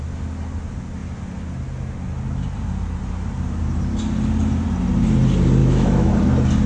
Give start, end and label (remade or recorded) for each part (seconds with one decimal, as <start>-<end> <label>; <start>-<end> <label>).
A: 0.0-5.6 recorded; 5.6-6.1 remade; 6.1-6.7 recorded